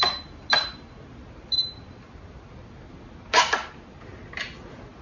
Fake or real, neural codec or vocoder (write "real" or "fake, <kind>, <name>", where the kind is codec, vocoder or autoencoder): real